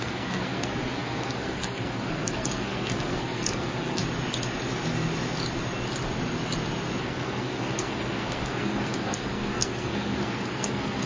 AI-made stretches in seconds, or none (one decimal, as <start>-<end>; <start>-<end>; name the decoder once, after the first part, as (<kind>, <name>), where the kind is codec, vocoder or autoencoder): 0.0-4.0 (codec, SNAC); 7.0-11.1